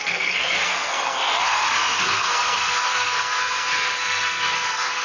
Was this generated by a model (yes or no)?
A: yes